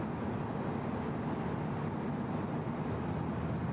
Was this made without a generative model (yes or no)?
yes